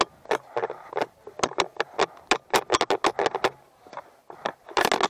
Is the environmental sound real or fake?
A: real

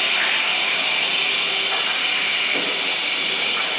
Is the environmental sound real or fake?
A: real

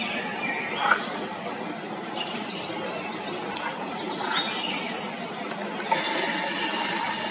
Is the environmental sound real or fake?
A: real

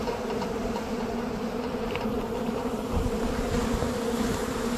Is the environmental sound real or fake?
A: fake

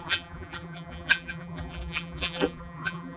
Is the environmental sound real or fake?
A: fake